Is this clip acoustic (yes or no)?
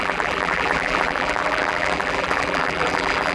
no